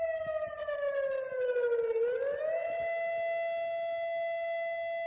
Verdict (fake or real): real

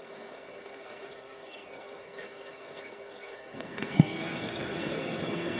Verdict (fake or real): fake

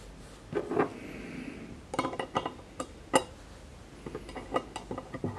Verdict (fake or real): real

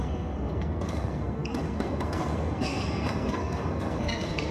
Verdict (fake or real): fake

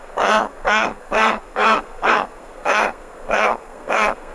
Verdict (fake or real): fake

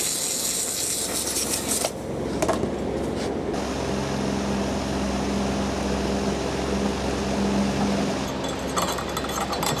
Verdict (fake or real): real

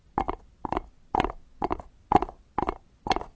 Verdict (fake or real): real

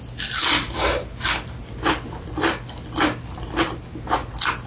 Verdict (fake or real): real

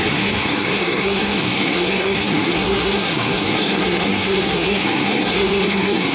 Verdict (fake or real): fake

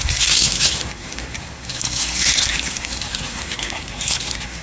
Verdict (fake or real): fake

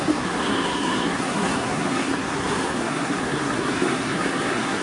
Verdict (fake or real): fake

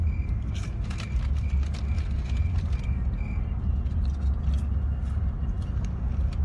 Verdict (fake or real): real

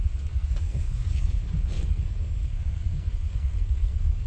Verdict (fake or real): fake